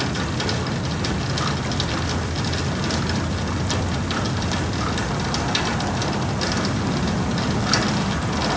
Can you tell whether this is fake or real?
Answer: real